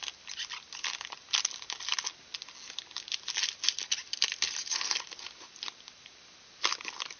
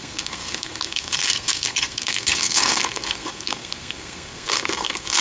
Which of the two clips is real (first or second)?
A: first